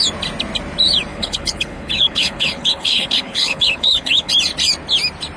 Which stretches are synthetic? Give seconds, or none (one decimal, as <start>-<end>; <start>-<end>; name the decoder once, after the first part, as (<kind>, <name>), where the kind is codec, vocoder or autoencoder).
1.1-4.3 (codec, HILCodec)